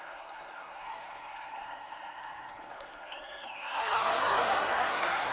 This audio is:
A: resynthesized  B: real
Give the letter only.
A